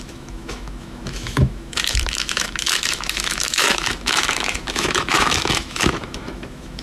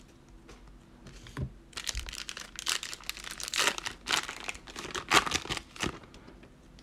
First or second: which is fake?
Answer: first